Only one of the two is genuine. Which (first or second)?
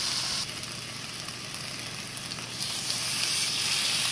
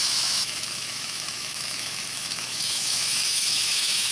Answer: first